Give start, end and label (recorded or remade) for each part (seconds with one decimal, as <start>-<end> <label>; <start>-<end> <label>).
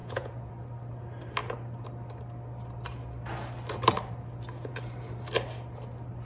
0.0-0.5 remade; 0.5-6.3 recorded